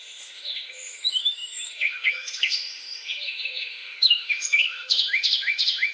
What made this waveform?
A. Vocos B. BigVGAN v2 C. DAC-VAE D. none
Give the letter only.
C